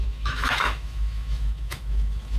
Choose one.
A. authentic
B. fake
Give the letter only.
B